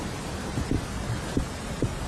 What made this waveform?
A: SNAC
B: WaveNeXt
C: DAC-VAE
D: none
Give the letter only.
D